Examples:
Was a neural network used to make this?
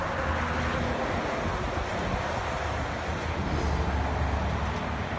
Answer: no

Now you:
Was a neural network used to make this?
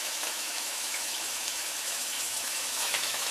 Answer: yes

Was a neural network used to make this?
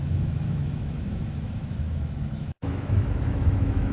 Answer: yes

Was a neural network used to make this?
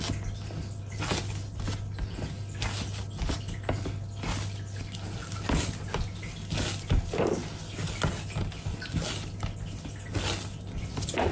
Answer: no